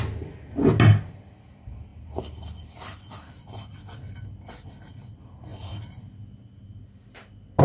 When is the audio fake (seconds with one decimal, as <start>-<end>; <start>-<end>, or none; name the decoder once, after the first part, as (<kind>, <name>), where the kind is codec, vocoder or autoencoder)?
none